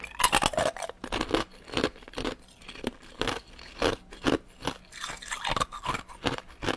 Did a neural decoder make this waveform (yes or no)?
no